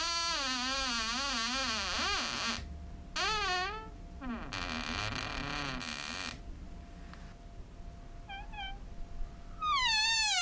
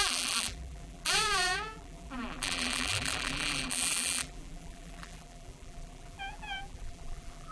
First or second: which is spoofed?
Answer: second